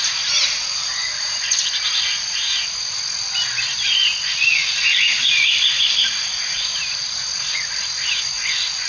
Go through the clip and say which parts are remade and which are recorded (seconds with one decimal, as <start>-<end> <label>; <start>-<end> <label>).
0.0-8.9 recorded